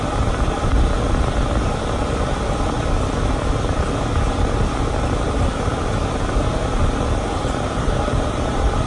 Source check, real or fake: real